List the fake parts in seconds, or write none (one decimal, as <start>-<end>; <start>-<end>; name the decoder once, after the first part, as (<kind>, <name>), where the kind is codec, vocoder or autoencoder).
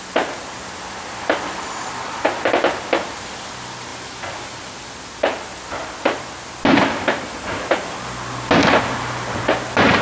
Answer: none